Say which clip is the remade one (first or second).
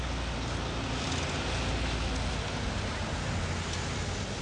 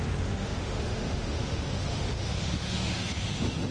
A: second